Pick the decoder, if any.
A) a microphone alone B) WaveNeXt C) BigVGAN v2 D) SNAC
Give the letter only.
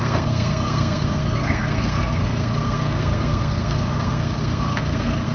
D